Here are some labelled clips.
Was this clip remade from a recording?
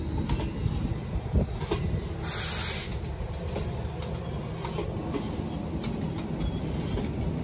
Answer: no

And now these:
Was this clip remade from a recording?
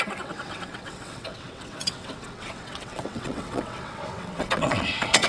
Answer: yes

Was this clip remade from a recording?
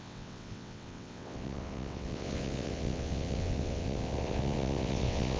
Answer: yes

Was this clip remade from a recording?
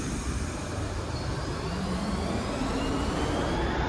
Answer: no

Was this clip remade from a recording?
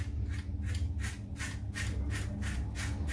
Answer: no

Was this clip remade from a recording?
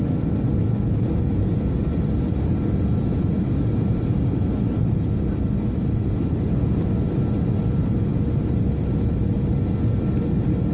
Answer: no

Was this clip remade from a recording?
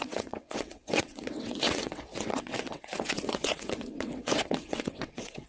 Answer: yes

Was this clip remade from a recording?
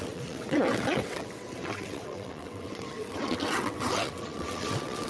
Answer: yes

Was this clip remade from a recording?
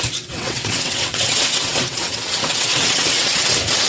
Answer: yes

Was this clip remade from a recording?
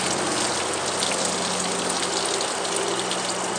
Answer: no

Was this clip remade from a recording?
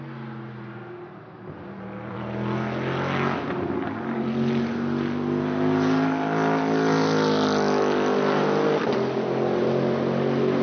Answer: no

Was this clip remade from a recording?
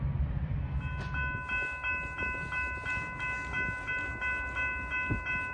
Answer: no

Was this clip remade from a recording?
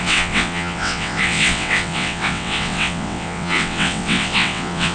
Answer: yes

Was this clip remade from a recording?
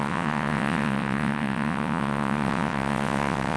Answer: yes